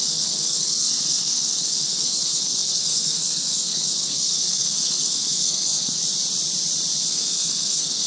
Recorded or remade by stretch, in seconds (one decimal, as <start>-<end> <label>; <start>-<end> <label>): 0.0-6.0 remade; 6.0-7.1 recorded; 7.1-8.1 remade